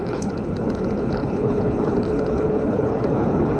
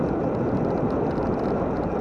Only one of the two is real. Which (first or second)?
second